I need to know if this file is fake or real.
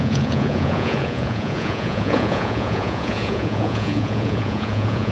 fake